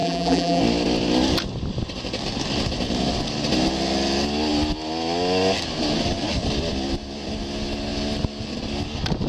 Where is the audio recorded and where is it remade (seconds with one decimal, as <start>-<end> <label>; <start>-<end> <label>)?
0.0-0.6 remade; 0.6-9.3 recorded